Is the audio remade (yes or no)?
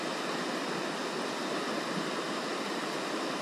no